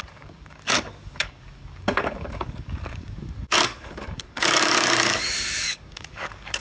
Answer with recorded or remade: remade